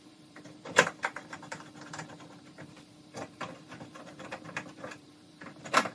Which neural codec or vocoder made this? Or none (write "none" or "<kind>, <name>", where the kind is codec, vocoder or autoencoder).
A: vocoder, BigVGAN v2